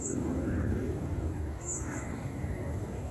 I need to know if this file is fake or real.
fake